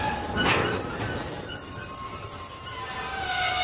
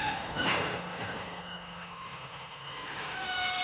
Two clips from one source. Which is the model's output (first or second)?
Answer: second